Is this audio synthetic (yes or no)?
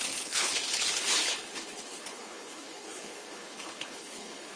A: yes